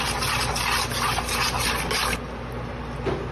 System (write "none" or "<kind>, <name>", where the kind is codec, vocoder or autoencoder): none